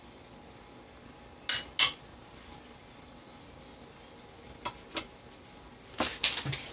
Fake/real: real